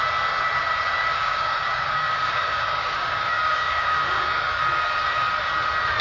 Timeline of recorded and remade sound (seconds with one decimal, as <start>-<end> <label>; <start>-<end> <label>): 0.0-1.0 recorded; 1.0-4.6 remade; 4.6-6.0 recorded